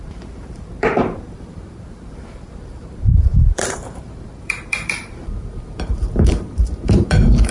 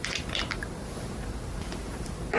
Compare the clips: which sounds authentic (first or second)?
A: second